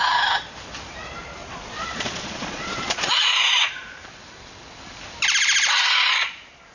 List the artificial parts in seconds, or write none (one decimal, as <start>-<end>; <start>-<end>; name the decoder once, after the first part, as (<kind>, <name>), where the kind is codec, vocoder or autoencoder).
1.4-3.7 (vocoder, Vocos)